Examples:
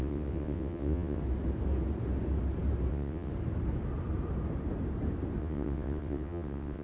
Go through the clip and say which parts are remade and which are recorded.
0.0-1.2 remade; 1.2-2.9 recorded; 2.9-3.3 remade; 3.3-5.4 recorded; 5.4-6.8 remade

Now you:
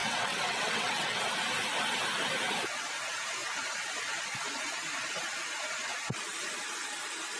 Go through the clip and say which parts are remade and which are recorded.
0.0-1.2 remade; 1.2-7.4 recorded